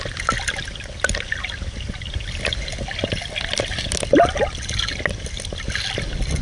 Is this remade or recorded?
recorded